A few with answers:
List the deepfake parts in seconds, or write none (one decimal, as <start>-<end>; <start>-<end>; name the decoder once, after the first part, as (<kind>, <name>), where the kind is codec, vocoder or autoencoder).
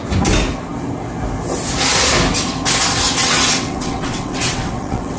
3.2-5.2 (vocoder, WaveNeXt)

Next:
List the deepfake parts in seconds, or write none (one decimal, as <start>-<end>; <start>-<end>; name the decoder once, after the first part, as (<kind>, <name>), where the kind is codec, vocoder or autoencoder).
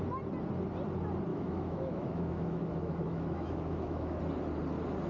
1.3-4.2 (autoencoder, DAC-VAE)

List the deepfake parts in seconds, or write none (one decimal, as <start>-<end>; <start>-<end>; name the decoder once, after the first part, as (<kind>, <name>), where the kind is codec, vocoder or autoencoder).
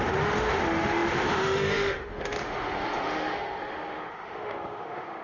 0.0-5.2 (autoencoder, DAC-VAE)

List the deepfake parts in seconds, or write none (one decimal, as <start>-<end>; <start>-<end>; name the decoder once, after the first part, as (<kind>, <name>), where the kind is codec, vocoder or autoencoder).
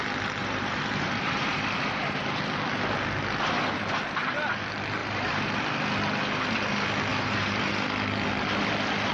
0.4-2.2 (vocoder, BigVGAN v2); 5.0-5.6; 7.1-7.7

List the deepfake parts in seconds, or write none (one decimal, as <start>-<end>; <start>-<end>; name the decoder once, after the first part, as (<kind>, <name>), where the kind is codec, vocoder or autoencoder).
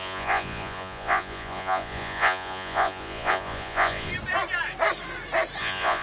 0.0-4.1 (vocoder, Vocos); 5.6-6.0